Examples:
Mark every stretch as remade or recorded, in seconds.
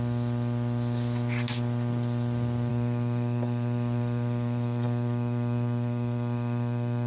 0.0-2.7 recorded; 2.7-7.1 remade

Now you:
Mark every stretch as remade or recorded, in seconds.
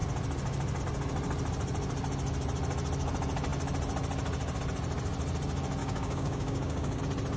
0.0-5.8 recorded; 5.8-7.0 remade; 7.0-7.4 recorded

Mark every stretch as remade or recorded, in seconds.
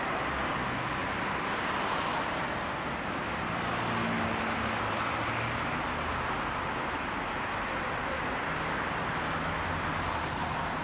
0.0-10.8 recorded